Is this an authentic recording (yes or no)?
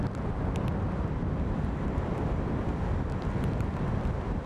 yes